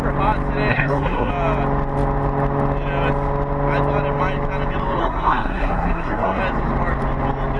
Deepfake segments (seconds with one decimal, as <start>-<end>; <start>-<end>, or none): 0.7-1.3; 5.0-6.4